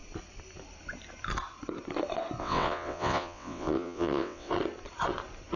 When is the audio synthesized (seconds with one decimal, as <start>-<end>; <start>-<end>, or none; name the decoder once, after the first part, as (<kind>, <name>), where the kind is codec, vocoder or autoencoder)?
2.4-4.5 (vocoder, WaveNeXt)